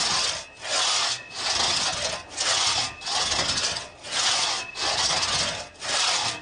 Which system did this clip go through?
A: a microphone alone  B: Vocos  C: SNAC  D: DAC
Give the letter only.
A